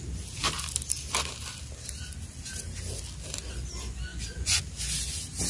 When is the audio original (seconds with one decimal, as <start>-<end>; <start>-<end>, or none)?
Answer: 0.0-4.1; 4.6-5.5